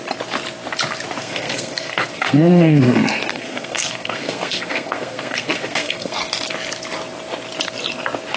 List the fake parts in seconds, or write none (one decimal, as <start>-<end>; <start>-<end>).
1.2-2.8; 3.3-6.2

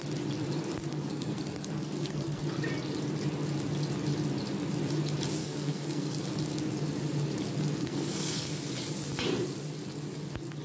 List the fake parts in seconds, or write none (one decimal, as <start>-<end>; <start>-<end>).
0.9-2.4; 5.4-6.3; 7.8-8.5

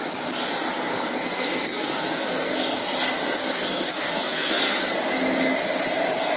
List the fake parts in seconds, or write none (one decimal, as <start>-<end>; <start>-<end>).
0.9-2.8; 3.4-4.8

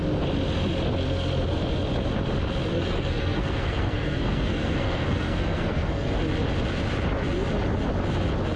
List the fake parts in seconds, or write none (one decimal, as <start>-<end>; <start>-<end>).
2.7-6.2

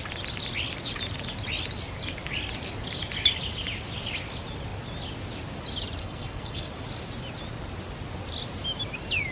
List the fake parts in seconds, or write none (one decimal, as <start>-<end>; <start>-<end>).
6.0-6.7

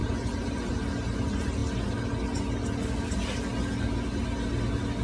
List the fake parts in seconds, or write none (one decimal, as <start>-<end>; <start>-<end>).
none

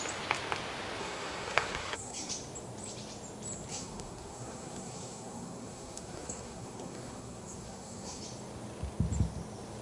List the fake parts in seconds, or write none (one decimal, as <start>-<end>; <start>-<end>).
1.0-2.3; 3.7-8.2

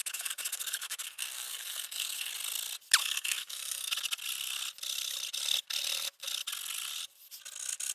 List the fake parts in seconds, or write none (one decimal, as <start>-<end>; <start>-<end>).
0.0-2.3; 3.0-3.9